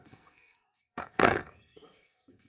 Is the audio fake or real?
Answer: fake